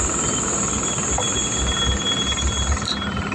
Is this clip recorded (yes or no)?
yes